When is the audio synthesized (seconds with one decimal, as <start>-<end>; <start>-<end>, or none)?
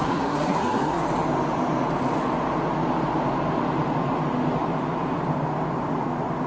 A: 0.0-1.0